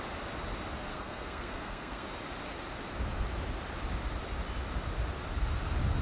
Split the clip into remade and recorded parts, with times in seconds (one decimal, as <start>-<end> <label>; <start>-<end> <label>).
0.0-0.9 recorded; 0.9-2.1 remade; 2.1-6.0 recorded